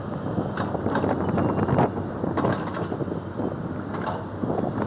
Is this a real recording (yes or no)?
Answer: yes